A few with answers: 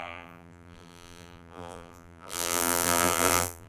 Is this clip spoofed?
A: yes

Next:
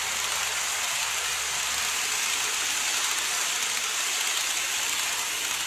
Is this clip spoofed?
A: no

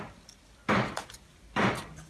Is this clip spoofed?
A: no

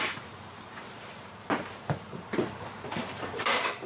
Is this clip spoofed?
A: yes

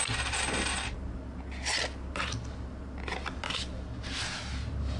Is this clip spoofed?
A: no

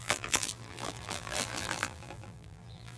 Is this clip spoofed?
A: yes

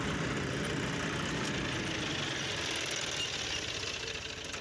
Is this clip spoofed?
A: no